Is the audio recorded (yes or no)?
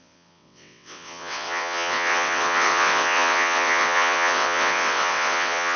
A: no